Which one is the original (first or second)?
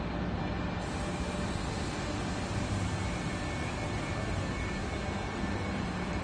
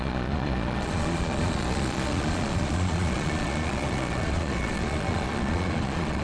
first